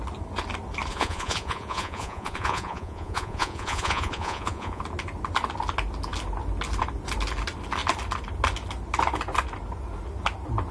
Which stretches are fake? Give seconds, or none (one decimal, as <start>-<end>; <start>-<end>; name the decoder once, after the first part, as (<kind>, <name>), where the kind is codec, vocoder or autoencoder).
0.9-4.8 (vocoder, Vocos)